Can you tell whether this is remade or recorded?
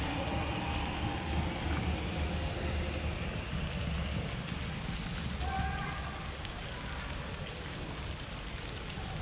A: recorded